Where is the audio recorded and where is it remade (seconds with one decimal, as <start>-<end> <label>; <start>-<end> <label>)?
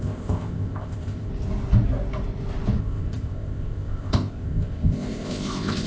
0.0-1.3 remade; 1.3-2.8 recorded; 2.8-5.9 remade